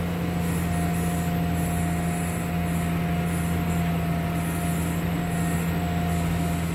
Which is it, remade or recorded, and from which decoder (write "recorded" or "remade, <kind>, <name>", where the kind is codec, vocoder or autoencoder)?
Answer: recorded